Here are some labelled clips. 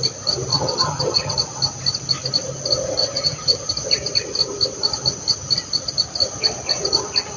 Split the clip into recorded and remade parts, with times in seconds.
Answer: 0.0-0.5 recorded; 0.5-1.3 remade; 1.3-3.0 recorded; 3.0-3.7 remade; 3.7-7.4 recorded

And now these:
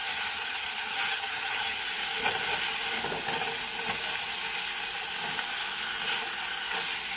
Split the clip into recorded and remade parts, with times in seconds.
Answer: 0.0-1.8 remade; 1.8-7.2 recorded

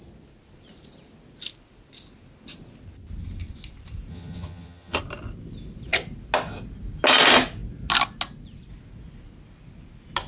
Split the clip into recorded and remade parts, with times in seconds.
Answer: 0.0-4.1 recorded; 4.1-5.0 remade; 5.0-10.3 recorded